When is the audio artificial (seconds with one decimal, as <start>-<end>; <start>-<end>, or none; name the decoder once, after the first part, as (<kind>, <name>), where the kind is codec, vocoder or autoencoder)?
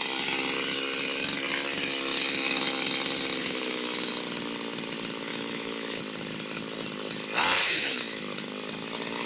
3.4-4.1 (autoencoder, DAC-VAE); 5.3-6.0; 7.6-8.2